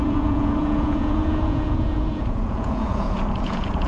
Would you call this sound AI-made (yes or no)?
yes